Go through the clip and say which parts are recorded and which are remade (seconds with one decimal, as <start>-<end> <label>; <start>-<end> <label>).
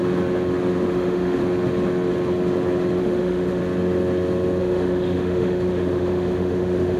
0.0-0.9 recorded; 0.9-1.4 remade; 1.4-3.0 recorded; 3.0-3.6 remade; 3.6-4.6 recorded; 4.6-7.0 remade